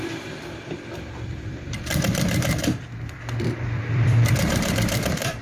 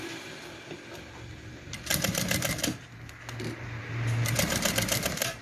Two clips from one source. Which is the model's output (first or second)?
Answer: first